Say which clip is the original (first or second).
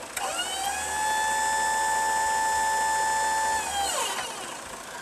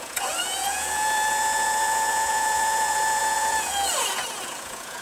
first